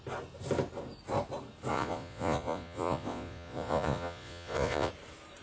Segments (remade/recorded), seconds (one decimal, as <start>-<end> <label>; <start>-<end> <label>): 0.0-1.7 recorded; 1.7-4.9 remade; 4.9-5.4 recorded